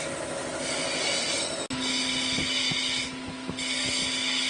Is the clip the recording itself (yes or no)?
yes